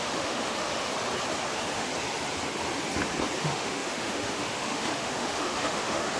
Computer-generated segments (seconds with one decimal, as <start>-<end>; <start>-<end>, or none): 0.0-0.9; 1.5-1.9; 3.4-6.2